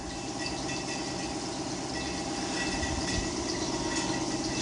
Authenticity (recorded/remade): recorded